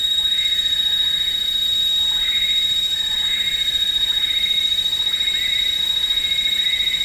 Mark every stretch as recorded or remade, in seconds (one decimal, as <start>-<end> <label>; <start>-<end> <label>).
0.0-7.0 recorded